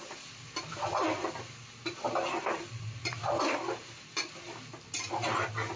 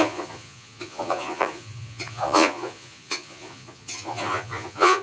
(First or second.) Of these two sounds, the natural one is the first